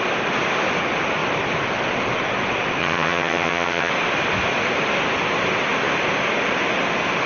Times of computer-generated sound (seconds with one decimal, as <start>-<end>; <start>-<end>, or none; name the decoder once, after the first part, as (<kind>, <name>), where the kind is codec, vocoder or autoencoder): 2.8-3.9 (vocoder, HiFi-GAN)